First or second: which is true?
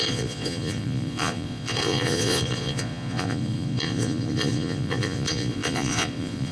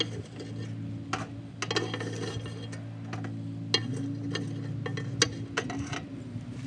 second